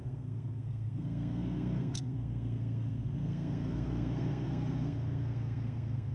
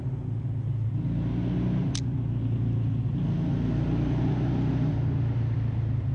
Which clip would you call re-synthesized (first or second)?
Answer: first